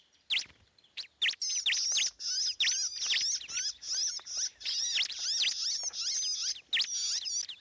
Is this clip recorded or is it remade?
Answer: recorded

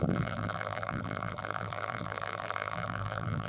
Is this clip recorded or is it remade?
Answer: remade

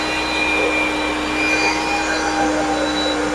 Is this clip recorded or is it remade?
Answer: recorded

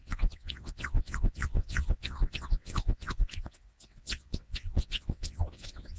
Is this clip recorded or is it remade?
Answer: remade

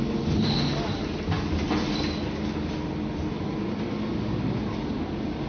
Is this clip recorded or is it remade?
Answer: recorded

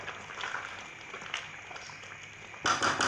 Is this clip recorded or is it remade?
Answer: recorded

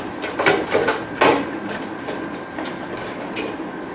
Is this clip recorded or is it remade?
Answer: recorded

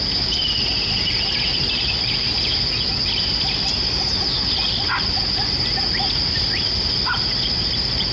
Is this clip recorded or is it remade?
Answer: recorded